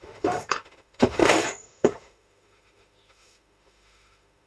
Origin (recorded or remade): remade